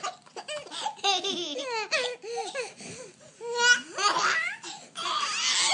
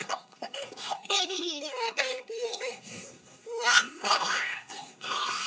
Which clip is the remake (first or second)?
second